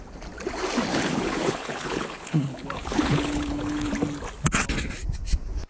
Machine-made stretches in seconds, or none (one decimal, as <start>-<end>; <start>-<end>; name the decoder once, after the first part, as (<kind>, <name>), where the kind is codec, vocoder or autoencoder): 0.9-3.9 (codec, HILCodec)